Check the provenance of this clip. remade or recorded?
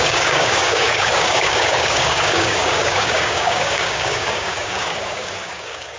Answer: remade